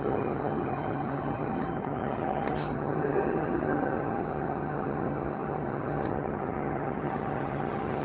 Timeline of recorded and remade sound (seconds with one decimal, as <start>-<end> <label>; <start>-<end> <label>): 0.0-8.0 remade